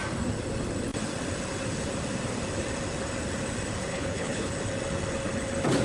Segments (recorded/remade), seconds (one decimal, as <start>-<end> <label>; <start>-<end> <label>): 0.0-3.9 recorded; 3.9-4.5 remade; 4.5-5.8 recorded